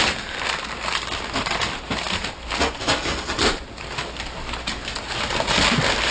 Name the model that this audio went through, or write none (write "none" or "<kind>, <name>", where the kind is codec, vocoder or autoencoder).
none